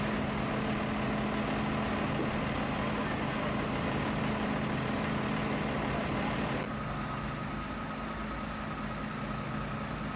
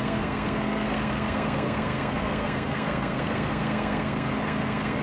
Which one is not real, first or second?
second